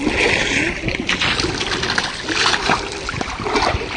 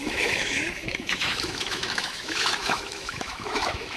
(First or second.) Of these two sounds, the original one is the first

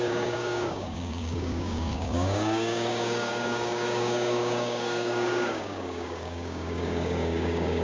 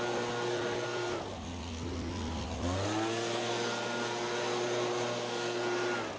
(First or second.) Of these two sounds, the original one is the second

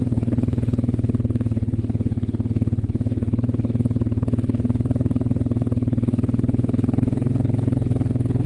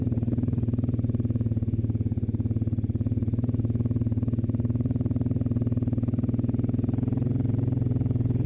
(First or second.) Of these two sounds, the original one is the second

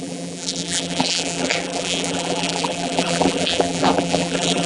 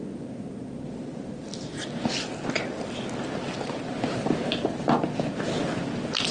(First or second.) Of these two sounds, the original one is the second